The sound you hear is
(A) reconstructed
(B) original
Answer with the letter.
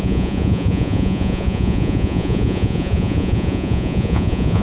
A